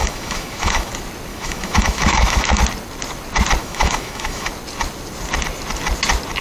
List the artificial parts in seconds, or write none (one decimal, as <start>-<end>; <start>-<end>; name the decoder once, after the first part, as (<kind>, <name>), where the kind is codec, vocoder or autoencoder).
0.0-0.9 (autoencoder, DAC-VAE); 1.3-2.6; 3.6-4.5